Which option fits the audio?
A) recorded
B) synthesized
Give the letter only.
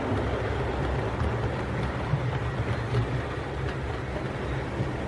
A